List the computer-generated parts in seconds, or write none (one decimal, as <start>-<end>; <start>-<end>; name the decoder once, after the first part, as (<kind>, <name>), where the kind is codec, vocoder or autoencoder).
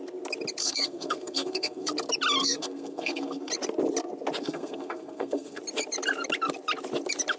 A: 0.6-1.9 (codec, SNAC); 2.4-3.5; 4.4-5.6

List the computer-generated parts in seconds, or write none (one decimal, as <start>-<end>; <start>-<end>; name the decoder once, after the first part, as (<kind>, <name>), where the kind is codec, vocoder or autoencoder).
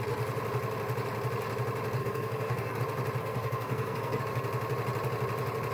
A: 2.0-2.8 (codec, SNAC); 3.2-4.2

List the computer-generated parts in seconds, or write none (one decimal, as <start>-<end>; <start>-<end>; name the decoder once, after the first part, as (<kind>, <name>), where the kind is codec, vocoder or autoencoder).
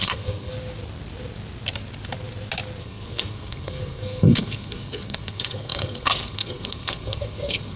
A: 0.0-0.5 (codec, SNAC); 2.8-7.8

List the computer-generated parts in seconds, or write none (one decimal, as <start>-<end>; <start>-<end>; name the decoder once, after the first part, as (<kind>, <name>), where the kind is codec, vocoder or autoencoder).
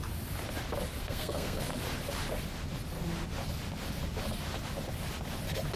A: 1.0-1.6 (codec, SNAC)